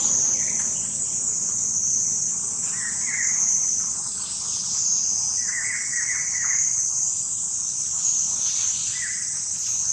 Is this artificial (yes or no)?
no